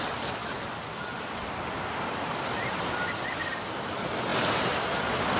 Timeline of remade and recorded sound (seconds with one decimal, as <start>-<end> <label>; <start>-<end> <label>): 0.0-5.4 recorded